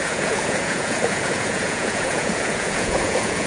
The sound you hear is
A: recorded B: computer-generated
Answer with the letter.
B